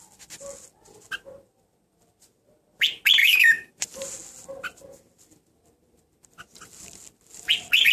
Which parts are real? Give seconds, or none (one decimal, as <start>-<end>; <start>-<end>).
0.0-3.2; 3.7-7.9